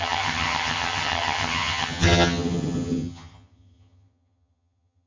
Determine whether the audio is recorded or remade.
remade